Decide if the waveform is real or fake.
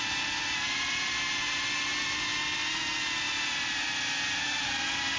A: real